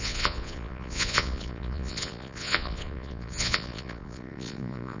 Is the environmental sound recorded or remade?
remade